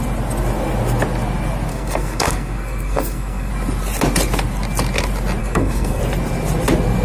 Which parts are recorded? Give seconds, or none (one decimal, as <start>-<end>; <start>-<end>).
0.0-1.7; 3.5-5.4; 6.0-7.0

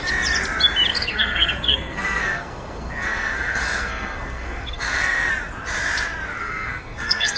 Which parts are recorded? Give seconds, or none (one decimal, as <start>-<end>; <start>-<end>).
0.0-0.9; 5.3-6.4

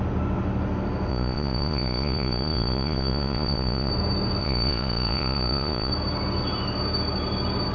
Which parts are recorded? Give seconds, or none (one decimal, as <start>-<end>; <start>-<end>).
0.0-1.1; 3.9-4.4; 5.9-7.7

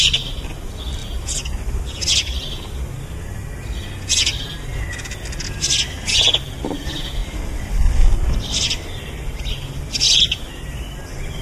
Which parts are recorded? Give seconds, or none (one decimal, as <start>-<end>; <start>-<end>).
1.0-6.1